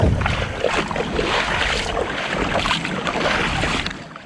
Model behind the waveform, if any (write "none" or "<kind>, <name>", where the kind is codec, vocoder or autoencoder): none